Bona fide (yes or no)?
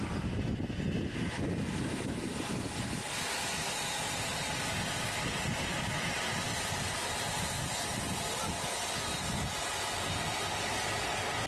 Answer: yes